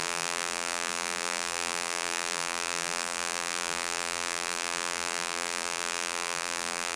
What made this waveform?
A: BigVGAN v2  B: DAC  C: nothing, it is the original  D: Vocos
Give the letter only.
A